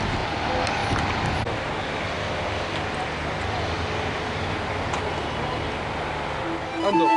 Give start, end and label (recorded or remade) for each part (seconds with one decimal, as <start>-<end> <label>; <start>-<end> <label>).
0.0-7.2 recorded